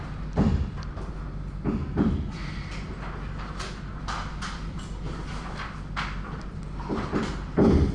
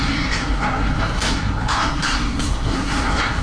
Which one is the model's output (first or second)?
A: second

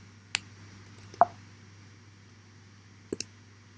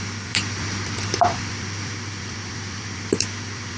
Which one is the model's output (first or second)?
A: second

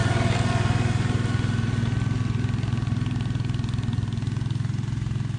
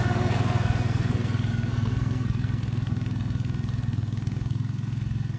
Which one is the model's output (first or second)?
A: second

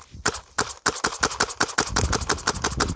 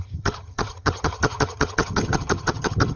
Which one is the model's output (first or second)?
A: second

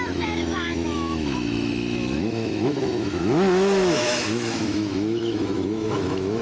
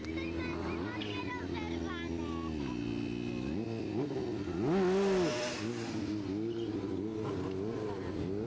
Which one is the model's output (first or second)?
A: first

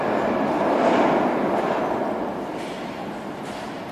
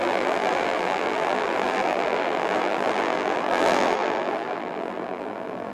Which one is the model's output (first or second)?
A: second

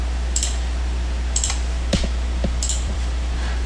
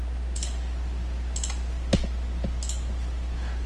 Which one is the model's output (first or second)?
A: first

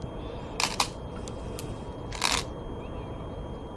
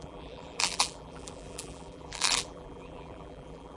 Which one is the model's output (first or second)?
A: second